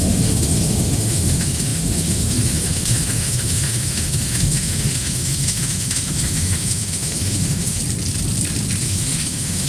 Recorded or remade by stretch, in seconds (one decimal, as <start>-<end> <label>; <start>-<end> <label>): 0.0-7.8 remade; 7.8-8.8 recorded; 8.8-9.7 remade